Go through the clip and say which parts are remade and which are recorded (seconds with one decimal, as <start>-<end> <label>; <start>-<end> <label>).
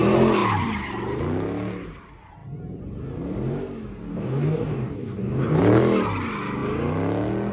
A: 0.0-4.1 recorded; 4.1-5.6 remade; 5.6-7.5 recorded